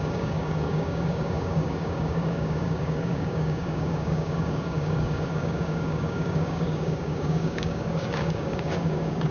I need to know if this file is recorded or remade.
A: remade